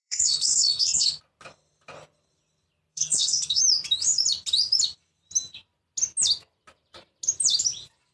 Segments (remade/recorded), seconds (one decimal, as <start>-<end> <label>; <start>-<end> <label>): 0.0-1.2 remade; 1.2-2.9 recorded; 2.9-3.6 remade; 3.6-8.1 recorded

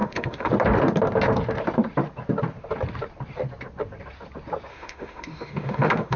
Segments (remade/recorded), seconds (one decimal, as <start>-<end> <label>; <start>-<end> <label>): 0.0-0.5 remade; 0.5-4.7 recorded; 4.7-6.2 remade